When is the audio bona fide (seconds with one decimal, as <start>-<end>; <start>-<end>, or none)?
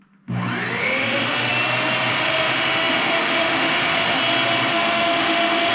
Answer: 0.0-0.8; 1.5-2.1; 4.2-4.7